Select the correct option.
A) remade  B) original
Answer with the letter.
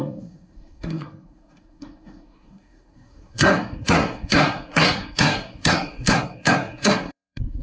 A